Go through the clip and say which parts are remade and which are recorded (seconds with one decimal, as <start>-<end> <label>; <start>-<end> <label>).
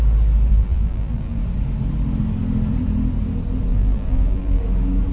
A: 0.0-0.5 recorded; 0.5-1.4 remade; 1.4-3.7 recorded; 3.7-4.6 remade; 4.6-5.1 recorded